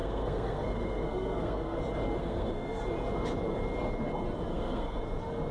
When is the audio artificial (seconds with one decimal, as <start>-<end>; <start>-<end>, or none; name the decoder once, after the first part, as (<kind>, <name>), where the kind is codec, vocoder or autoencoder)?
0.0-1.8 (codec, SNAC); 2.2-2.8; 4.5-5.0

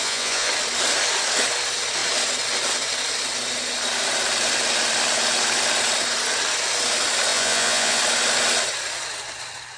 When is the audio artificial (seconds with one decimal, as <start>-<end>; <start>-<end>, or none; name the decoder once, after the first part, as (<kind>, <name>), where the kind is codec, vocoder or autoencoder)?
0.0-0.5 (vocoder, Vocos); 7.3-8.0

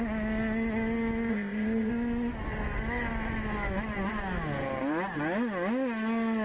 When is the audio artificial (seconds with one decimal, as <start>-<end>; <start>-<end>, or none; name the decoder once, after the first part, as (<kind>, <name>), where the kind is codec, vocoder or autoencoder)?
1.3-1.9 (codec, ZipCodec)

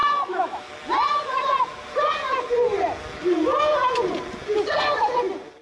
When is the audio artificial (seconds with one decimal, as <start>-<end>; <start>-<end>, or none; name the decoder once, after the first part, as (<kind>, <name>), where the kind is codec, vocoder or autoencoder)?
0.0-0.7 (autoencoder, DAC-VAE)